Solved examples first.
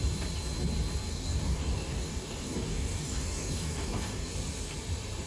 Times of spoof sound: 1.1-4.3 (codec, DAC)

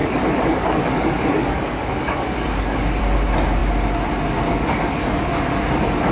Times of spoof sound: 0.0-3.0 (codec, DAC); 4.5-5.3

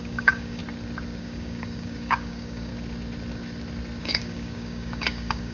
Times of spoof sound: 0.0-0.6 (codec, DAC); 1.2-2.7; 4.0-5.5

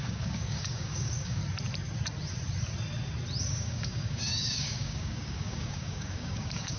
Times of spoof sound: 0.0-1.4 (codec, DAC); 3.5-6.8

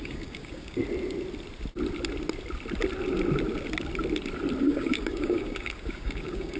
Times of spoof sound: 0.0-0.8 (codec, DAC); 4.6-6.6

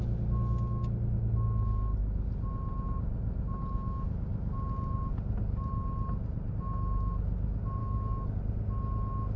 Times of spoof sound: 7.8-8.4 (codec, DAC)

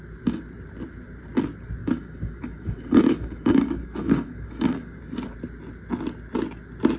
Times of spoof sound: 1.8-5.0 (codec, DAC)

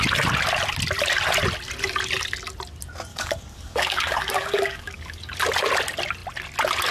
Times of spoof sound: 3.1-5.2 (codec, DAC)